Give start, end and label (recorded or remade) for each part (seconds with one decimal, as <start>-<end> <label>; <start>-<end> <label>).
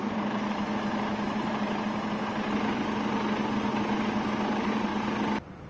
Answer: 0.0-1.9 remade; 1.9-4.5 recorded; 4.5-4.9 remade; 4.9-5.7 recorded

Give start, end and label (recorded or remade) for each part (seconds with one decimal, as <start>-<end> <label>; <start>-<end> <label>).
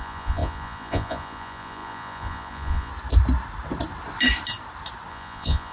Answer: 0.0-2.9 remade; 2.9-5.1 recorded; 5.1-5.7 remade